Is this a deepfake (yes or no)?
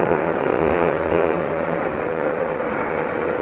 yes